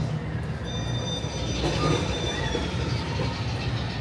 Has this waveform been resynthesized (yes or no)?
no